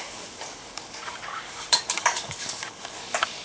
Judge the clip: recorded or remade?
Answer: remade